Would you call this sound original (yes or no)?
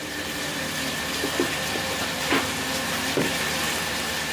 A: no